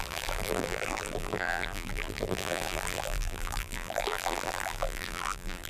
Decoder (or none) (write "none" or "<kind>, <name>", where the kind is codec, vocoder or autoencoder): vocoder, BigVGAN v2